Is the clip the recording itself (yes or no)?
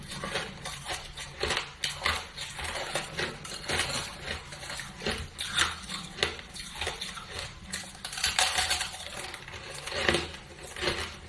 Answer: yes